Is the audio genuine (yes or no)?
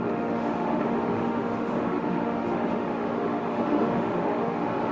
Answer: no